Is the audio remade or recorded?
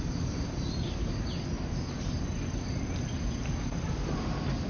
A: recorded